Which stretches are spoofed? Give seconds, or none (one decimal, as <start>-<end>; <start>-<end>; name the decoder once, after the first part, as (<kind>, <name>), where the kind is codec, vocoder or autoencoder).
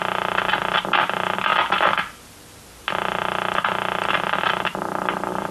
none